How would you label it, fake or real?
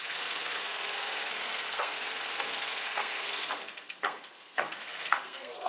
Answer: fake